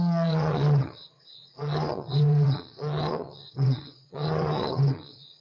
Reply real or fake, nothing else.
fake